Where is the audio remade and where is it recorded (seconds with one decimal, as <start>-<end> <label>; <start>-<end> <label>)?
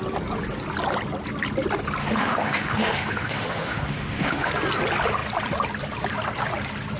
0.0-2.0 recorded; 2.0-4.5 remade; 4.5-7.0 recorded